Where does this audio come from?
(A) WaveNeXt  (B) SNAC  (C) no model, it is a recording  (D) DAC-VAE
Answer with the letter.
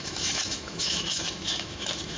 D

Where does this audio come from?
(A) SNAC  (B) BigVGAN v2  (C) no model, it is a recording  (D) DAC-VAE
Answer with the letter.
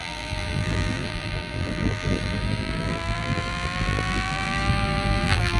B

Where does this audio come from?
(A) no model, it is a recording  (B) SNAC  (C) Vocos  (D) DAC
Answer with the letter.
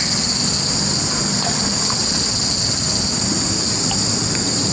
A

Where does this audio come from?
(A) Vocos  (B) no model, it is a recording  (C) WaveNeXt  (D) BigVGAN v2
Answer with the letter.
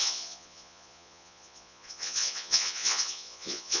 A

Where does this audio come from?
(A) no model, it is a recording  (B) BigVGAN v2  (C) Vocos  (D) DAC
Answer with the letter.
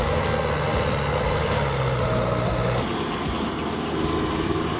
A